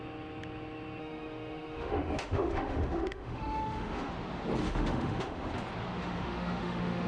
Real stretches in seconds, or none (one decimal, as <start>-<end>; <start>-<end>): 0.0-1.0; 4.1-4.6; 5.5-6.0